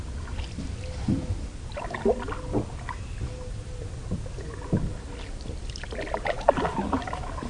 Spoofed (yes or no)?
no